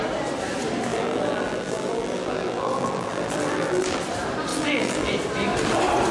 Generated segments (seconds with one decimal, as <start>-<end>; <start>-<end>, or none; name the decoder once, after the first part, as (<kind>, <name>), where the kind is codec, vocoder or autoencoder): 0.9-4.0 (vocoder, BigVGAN v2); 4.5-5.1